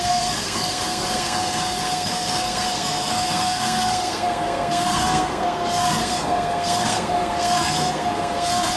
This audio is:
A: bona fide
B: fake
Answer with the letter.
B